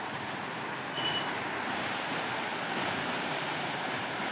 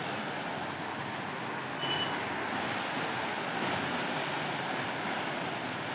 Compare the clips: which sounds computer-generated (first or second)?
first